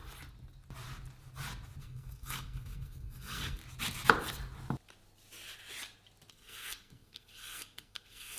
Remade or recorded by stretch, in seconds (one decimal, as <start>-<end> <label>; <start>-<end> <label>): 0.0-1.8 recorded; 1.8-3.6 remade; 3.6-6.3 recorded; 6.3-8.4 remade